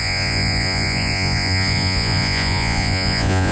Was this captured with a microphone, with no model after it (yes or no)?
no